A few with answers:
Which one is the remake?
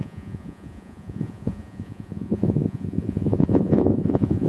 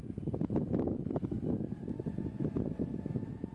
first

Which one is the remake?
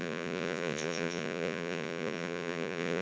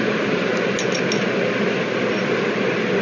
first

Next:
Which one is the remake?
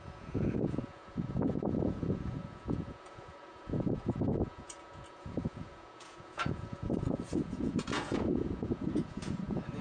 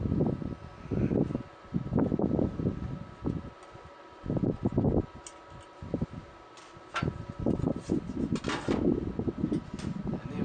first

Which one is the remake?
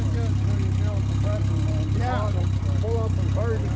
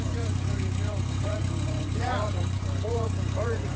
second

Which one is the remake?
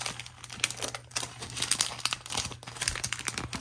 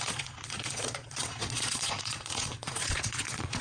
second